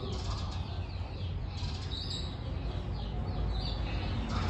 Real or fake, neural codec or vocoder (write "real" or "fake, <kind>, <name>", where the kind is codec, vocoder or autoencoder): real